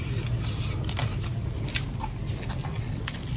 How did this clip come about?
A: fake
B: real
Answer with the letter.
B